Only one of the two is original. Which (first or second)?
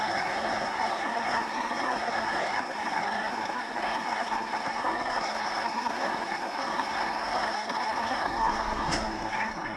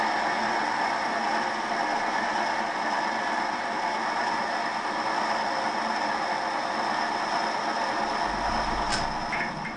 second